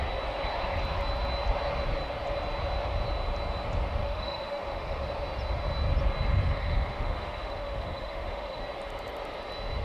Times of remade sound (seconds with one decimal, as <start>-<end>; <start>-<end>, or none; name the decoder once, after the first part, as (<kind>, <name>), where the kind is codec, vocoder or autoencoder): 4.0-5.1 (autoencoder, DAC-VAE); 6.4-8.6

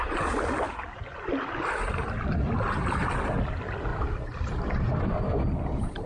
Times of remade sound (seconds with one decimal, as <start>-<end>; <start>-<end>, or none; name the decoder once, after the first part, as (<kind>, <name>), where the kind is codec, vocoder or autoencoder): 3.9-6.1 (vocoder, BigVGAN v2)

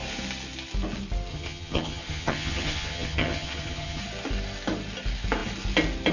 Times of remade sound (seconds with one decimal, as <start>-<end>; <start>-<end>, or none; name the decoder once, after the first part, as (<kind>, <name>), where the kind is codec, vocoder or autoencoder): 1.3-4.0 (vocoder, HiFi-GAN)

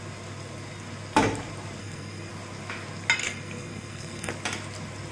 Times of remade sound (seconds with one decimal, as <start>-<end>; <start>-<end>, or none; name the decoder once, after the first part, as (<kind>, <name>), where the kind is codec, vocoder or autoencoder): 1.8-2.3 (codec, SNAC); 3.2-4.3

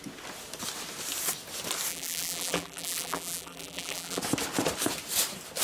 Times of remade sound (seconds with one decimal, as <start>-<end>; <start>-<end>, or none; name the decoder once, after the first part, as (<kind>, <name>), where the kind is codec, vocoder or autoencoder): 1.9-4.2 (vocoder, BigVGAN v2)

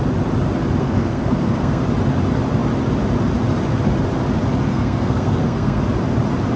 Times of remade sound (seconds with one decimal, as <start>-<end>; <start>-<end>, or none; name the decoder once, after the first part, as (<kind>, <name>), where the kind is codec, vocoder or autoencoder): 0.8-1.8 (codec, SNAC); 4.7-5.8

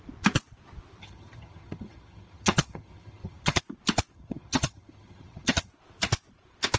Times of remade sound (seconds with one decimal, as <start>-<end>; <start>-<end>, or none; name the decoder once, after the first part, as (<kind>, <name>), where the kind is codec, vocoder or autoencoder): 1.0-3.6 (vocoder, HiFi-GAN); 4.1-5.7